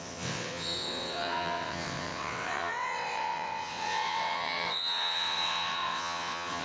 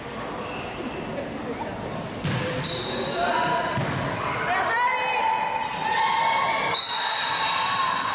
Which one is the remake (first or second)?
first